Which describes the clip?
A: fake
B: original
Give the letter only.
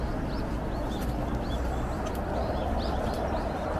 B